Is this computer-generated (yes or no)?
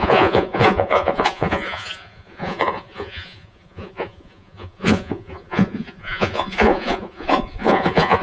yes